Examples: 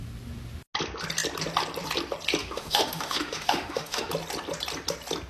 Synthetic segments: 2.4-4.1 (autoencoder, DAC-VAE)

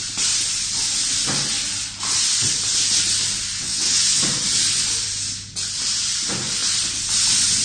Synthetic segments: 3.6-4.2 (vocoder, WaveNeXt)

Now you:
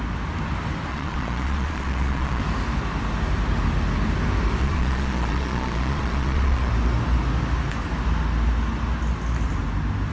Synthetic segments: 0.9-2.4 (vocoder, Vocos); 4.6-6.7

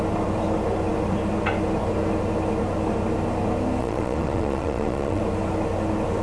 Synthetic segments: 3.8-5.2 (vocoder, Vocos)

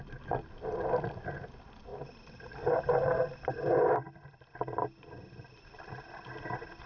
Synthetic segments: none

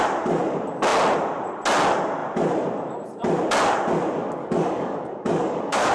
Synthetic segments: 4.4-5.9 (codec, DAC)

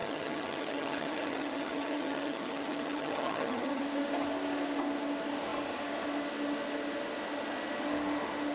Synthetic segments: 0.0-3.8 (vocoder, HiFi-GAN)